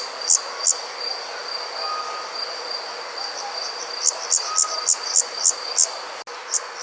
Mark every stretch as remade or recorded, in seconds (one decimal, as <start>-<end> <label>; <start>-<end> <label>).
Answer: 0.0-6.8 recorded